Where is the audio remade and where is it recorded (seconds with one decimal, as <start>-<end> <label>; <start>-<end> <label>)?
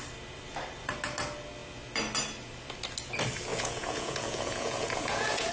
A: 0.0-3.5 recorded; 3.5-5.5 remade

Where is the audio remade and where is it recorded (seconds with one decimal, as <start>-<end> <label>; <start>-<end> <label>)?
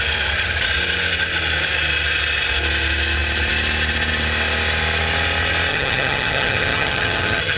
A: 0.0-5.7 recorded; 5.7-7.6 remade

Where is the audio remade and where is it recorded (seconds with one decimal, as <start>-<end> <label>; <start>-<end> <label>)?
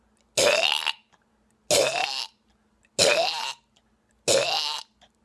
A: 0.0-5.2 recorded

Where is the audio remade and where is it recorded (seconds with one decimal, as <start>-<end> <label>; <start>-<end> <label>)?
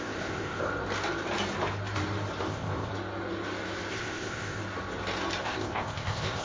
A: 0.0-0.7 remade; 0.7-2.4 recorded; 2.4-2.9 remade; 2.9-3.9 recorded; 3.9-4.6 remade; 4.6-5.4 recorded; 5.4-6.4 remade